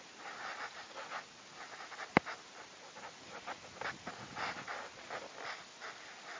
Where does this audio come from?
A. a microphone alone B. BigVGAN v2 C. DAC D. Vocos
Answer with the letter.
A